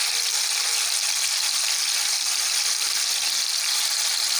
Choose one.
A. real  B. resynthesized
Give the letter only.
A